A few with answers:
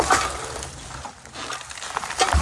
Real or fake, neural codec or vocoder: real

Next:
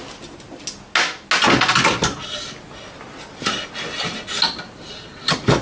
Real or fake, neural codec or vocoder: real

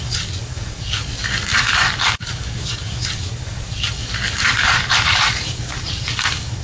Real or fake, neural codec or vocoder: fake, codec, DAC